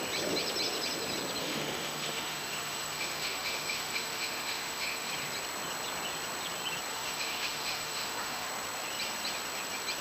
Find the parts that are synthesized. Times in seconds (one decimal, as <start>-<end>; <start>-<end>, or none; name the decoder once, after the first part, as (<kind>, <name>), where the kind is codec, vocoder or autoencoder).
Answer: 1.4-5.1 (autoencoder, DAC-VAE); 6.9-8.5